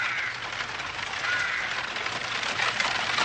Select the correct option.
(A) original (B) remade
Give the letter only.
A